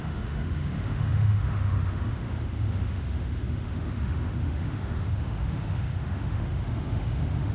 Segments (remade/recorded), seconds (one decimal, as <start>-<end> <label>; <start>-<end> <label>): 0.0-7.5 remade